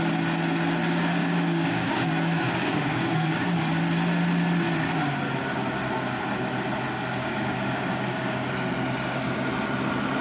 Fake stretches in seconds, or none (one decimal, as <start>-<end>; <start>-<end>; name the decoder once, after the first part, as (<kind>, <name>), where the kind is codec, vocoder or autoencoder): 1.2-3.8 (codec, DAC); 7.2-8.5